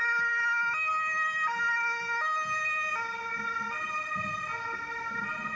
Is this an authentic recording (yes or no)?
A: yes